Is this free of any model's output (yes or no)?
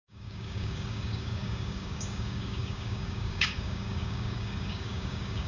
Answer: no